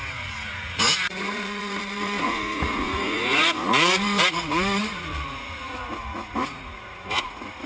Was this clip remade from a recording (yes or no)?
yes